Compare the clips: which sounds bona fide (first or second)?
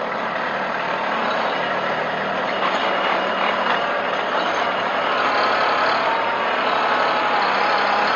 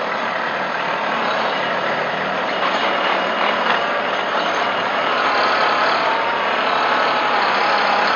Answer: first